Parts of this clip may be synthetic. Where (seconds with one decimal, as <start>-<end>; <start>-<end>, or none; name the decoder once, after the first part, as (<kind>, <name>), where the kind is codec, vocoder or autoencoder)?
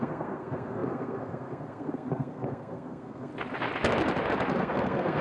0.0-3.3 (codec, SNAC); 4.6-5.2